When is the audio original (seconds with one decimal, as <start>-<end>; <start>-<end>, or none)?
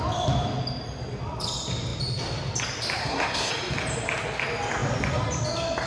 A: 0.0-3.0; 3.5-5.9